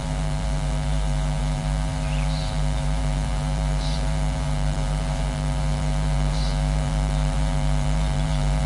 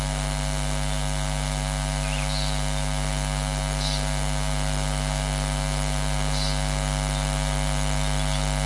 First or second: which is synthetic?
first